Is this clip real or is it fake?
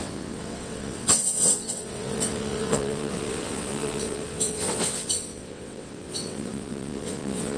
fake